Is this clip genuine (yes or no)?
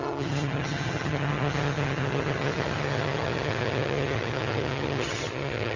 no